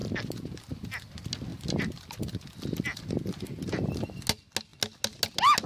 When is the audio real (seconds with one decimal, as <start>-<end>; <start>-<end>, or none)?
0.7-1.5; 2.1-5.7